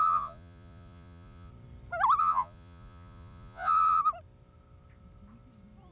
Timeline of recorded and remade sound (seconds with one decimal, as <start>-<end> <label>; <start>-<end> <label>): 0.0-1.5 remade; 1.5-2.2 recorded; 2.2-4.0 remade; 4.0-5.9 recorded